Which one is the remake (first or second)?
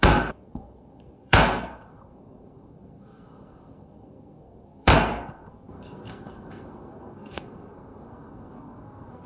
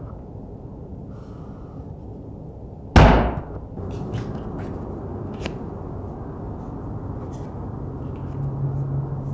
first